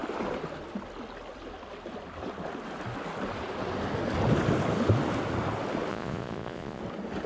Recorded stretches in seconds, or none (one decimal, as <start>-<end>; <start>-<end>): 0.0-5.9; 6.8-7.3